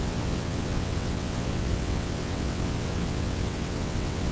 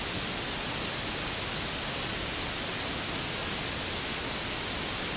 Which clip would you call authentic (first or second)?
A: second